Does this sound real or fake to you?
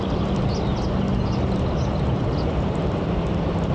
real